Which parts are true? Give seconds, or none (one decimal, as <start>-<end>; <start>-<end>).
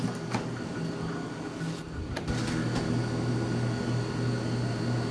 0.0-5.1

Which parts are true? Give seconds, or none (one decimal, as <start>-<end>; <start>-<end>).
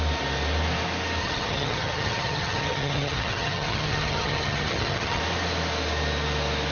0.0-1.2; 5.2-6.7